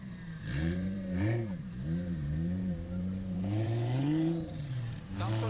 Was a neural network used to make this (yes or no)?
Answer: yes